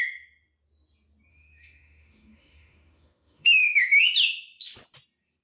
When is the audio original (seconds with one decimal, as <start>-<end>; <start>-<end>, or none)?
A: 0.0-1.3; 4.0-5.4